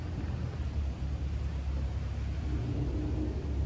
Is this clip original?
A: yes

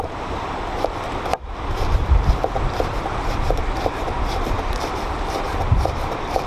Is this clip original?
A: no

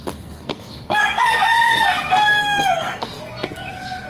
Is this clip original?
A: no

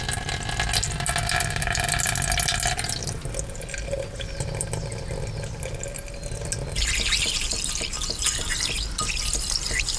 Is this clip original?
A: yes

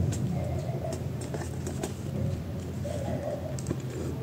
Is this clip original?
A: yes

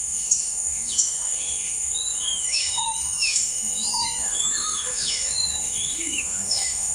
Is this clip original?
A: no